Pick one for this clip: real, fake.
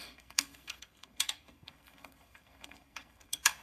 fake